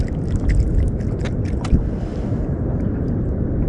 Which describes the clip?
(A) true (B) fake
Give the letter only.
A